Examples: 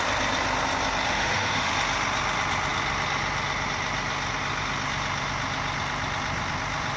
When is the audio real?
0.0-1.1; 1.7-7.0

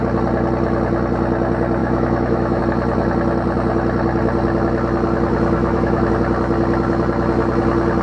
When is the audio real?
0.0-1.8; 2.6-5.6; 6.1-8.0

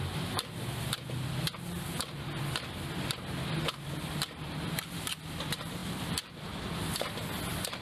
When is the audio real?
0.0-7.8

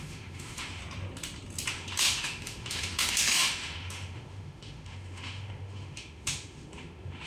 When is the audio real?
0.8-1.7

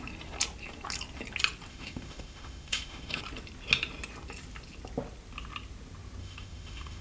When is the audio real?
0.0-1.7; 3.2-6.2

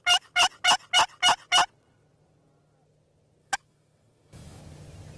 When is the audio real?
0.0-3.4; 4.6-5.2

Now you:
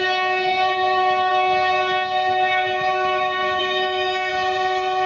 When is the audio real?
4.3-5.1